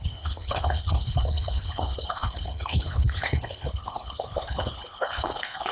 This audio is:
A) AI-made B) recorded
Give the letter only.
A